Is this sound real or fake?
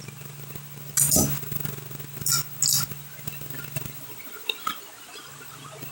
real